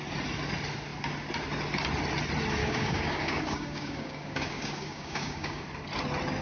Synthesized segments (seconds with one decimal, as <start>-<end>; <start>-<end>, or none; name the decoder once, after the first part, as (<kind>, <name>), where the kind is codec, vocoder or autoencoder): 2.6-5.6 (codec, DAC)